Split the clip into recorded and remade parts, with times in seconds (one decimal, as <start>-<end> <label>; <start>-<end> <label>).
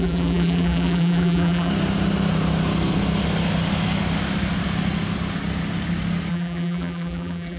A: 0.0-1.7 remade; 1.7-6.3 recorded; 6.3-7.6 remade